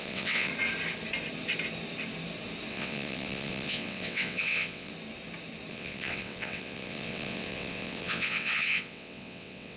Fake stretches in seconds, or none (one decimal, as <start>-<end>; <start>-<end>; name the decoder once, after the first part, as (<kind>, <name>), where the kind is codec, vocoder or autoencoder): 0.0-0.5 (vocoder, WaveNeXt); 2.7-4.9; 5.7-9.8